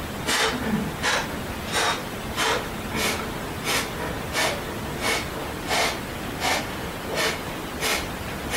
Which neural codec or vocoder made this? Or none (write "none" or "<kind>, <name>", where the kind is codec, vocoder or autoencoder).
none